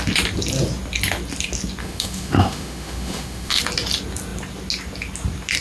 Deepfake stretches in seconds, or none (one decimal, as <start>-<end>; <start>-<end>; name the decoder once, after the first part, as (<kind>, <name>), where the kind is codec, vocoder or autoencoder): 1.8-3.6 (autoencoder, DAC-VAE)